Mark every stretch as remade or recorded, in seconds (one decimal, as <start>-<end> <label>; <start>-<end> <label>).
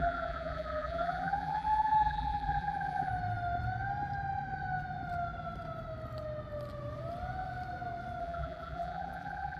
0.0-3.1 remade; 3.1-8.2 recorded; 8.2-9.6 remade